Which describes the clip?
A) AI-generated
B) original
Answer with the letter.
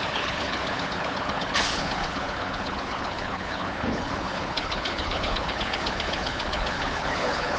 A